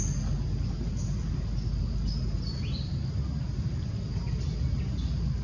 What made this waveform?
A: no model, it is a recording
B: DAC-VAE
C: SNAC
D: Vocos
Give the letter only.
A